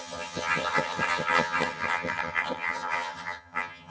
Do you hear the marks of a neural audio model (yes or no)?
yes